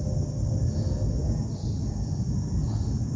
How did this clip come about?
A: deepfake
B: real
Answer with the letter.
B